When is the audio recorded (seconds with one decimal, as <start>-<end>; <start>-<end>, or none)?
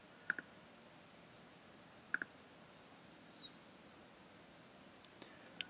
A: 0.0-5.7